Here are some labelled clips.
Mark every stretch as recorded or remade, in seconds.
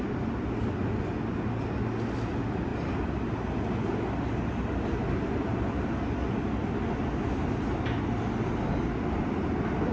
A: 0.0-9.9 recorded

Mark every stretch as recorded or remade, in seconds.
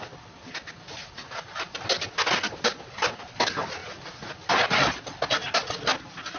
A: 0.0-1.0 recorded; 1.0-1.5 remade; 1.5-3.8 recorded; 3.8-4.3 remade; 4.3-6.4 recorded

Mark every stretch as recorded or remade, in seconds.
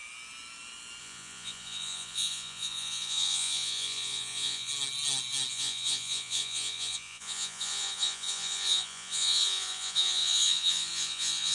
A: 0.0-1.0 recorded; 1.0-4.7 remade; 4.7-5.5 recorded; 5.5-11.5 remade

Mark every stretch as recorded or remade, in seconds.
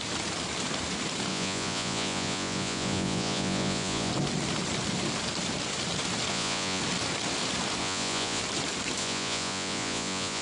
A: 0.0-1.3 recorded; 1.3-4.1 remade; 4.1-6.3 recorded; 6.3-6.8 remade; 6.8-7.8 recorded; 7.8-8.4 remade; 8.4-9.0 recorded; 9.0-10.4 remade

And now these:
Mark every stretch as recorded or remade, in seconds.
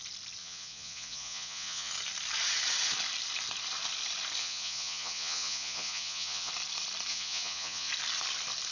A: 0.0-0.4 recorded; 0.4-1.9 remade; 1.9-4.4 recorded; 4.4-6.5 remade; 6.5-7.1 recorded; 7.1-7.9 remade; 7.9-8.7 recorded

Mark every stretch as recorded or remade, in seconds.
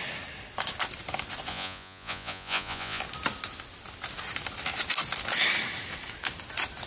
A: 0.0-1.5 recorded; 1.5-3.0 remade; 3.0-6.9 recorded